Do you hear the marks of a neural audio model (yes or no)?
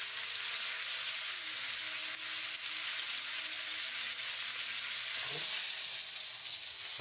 no